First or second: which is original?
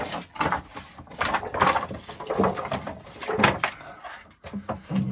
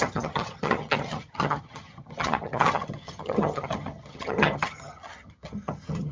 first